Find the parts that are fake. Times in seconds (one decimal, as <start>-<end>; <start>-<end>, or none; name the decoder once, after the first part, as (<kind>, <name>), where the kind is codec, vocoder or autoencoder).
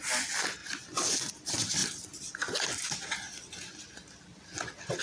none